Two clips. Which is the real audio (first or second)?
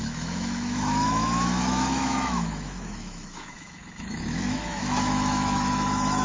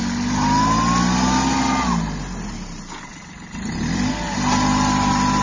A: second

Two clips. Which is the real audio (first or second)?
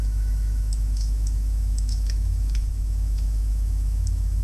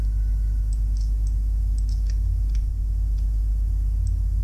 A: second